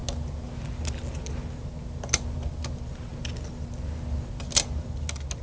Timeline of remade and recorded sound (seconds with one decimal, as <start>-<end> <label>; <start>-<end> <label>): 0.0-5.4 recorded